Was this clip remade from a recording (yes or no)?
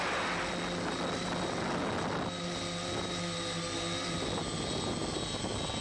no